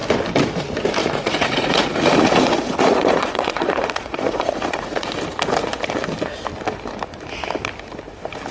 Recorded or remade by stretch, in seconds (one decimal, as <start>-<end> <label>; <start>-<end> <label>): 0.0-1.0 recorded; 1.0-5.1 remade; 5.1-8.5 recorded

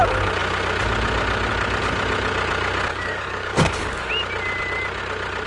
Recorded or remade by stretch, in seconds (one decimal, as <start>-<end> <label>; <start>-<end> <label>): 0.0-2.9 recorded; 2.9-4.1 remade; 4.1-5.5 recorded

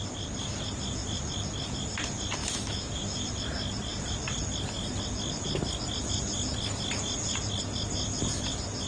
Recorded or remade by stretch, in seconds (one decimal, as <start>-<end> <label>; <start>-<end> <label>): 0.0-2.4 recorded; 2.4-3.3 remade; 3.3-8.9 recorded

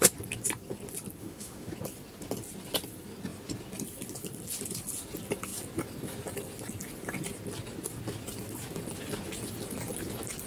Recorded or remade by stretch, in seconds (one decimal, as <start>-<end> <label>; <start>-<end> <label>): 0.0-1.2 recorded; 1.2-1.7 remade; 1.7-10.5 recorded

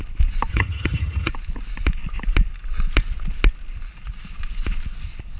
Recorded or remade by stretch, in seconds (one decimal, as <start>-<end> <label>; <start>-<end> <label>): 0.0-0.5 recorded; 0.5-1.3 remade; 1.3-5.4 recorded